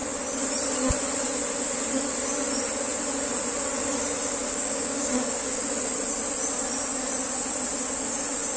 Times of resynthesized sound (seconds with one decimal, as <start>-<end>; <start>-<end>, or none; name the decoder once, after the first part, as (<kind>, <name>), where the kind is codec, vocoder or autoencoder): 4.4-5.6 (codec, DAC)